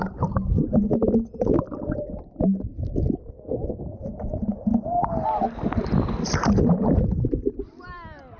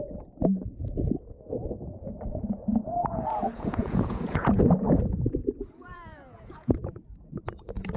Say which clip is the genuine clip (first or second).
first